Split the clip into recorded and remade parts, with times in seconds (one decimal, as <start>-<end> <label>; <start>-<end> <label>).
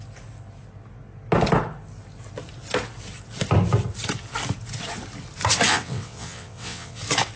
0.0-5.7 recorded; 5.7-7.0 remade; 7.0-7.4 recorded